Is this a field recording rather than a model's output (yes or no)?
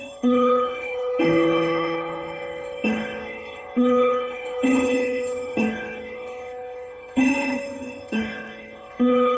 no